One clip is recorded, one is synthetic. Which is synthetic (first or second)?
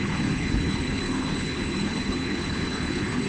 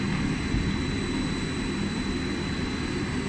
first